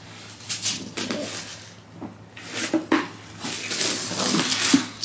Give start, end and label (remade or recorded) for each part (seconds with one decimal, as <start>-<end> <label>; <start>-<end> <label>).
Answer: 0.0-5.0 recorded